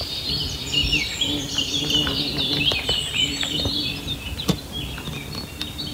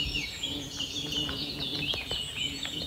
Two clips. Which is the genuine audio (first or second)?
first